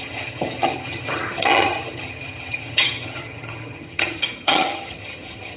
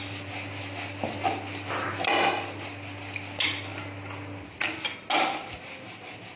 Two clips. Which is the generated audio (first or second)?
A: first